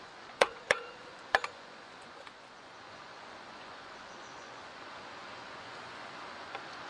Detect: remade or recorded remade